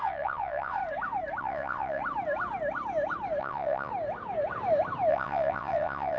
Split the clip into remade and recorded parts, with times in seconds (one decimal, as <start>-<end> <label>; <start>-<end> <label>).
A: 0.0-0.8 remade; 0.8-1.4 recorded; 1.4-2.0 remade; 2.0-3.4 recorded; 3.4-3.9 remade; 3.9-5.1 recorded; 5.1-6.2 remade